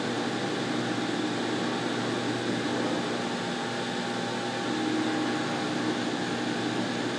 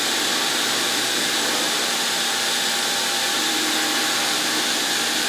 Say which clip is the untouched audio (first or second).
first